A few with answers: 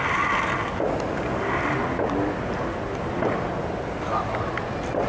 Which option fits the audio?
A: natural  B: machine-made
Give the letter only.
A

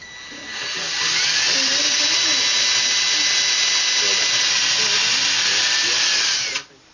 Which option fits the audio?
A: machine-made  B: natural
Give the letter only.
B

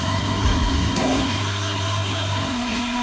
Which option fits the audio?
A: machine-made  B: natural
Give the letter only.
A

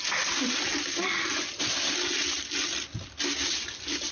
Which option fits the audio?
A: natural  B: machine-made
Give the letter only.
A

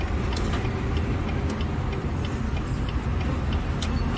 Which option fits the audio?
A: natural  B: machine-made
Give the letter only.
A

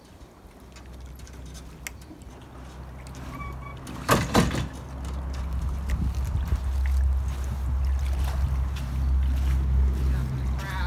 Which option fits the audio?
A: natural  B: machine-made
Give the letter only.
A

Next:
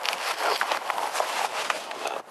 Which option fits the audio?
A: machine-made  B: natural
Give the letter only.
B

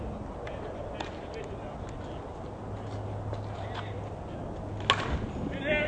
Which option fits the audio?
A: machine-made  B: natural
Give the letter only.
B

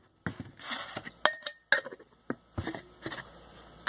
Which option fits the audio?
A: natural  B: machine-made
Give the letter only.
A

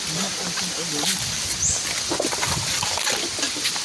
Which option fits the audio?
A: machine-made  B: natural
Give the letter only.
B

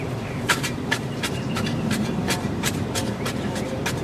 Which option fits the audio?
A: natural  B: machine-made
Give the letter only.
B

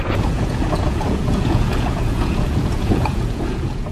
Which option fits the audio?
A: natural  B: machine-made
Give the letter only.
B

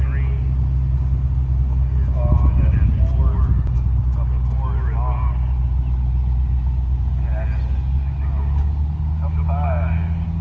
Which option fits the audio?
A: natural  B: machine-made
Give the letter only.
A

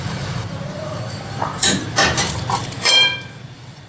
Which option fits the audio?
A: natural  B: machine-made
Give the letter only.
B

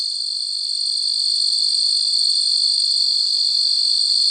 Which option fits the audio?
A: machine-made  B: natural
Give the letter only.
B